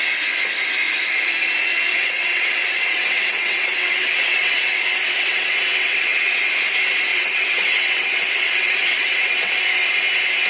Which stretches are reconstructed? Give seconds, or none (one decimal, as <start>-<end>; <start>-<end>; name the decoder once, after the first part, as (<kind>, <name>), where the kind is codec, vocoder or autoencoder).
1.9-6.5 (vocoder, WaveNeXt); 7.1-9.5